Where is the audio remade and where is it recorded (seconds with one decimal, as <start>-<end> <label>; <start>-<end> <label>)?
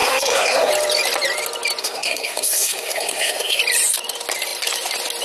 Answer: 0.0-0.7 remade; 0.7-1.8 recorded; 1.8-3.6 remade; 3.6-5.2 recorded